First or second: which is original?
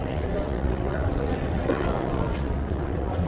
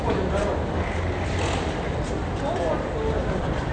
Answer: second